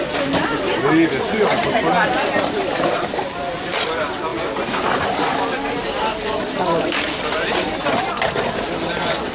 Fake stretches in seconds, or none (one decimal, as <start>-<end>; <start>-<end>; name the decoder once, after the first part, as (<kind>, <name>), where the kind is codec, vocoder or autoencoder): none